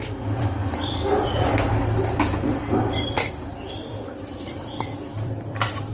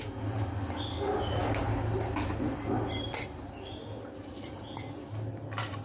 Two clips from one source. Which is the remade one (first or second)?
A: first